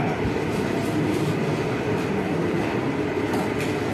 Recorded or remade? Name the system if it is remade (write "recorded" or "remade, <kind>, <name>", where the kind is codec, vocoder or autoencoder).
recorded